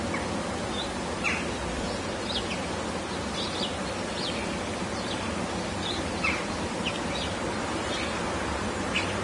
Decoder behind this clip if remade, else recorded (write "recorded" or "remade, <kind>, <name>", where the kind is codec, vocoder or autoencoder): recorded